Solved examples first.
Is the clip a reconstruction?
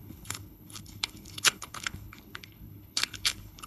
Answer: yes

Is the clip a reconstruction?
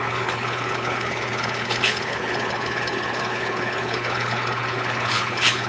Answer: yes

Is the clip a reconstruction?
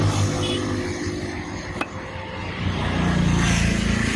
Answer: no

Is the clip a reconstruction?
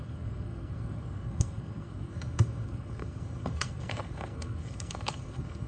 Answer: yes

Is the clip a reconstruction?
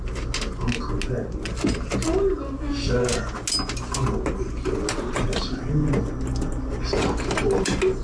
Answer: no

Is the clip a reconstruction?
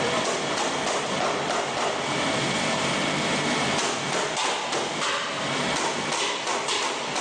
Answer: yes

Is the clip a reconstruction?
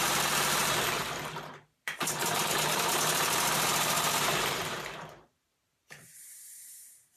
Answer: yes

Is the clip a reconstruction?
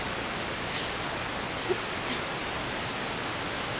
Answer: no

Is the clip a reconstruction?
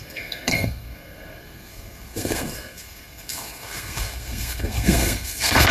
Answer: yes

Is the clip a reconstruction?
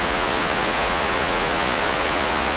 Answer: yes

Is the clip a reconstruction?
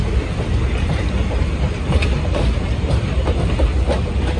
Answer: no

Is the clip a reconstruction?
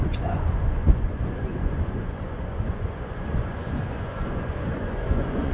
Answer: yes